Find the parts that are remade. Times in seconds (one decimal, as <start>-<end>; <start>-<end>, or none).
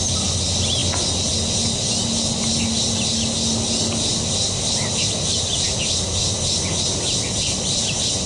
none